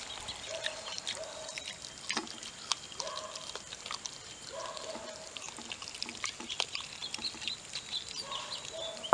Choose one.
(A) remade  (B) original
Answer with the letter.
B